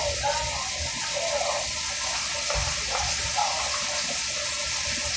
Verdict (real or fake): real